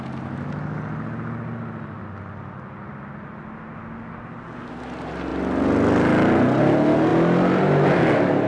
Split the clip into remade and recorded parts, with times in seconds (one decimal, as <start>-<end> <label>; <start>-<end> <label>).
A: 0.0-8.5 recorded